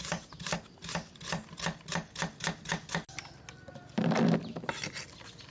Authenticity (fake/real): real